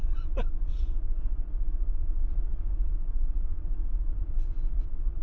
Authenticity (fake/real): fake